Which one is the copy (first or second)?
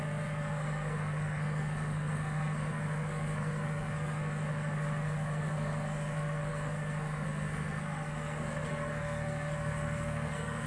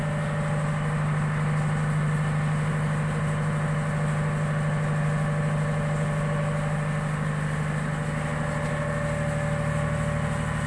first